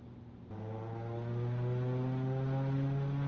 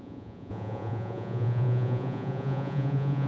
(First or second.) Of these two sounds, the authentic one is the first